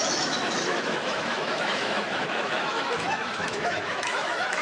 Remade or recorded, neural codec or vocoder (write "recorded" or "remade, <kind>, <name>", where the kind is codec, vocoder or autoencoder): remade, autoencoder, DAC-VAE